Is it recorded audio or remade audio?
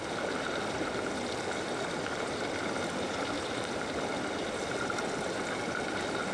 recorded